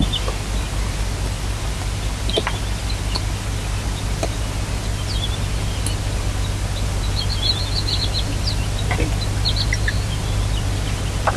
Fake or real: real